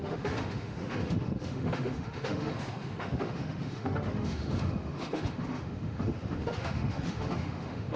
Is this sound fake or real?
fake